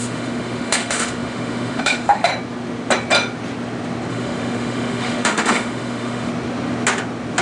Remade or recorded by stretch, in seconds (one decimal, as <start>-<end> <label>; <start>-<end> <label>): 0.0-2.3 remade; 2.3-4.1 recorded; 4.1-6.3 remade; 6.3-7.4 recorded